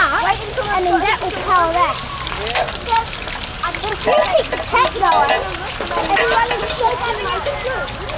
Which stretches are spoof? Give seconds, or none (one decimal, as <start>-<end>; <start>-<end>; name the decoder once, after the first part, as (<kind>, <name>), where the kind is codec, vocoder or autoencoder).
none